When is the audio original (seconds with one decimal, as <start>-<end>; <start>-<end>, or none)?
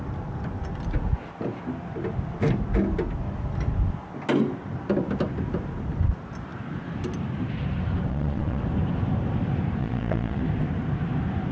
0.0-8.1; 8.6-9.8; 10.4-11.5